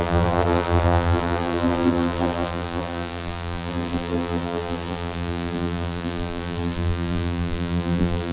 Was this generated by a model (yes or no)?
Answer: yes